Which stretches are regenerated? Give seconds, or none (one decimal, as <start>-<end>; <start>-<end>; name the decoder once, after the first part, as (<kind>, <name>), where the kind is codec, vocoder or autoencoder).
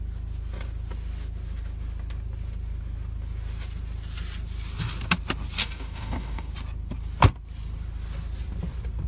5.6-6.5 (codec, DAC)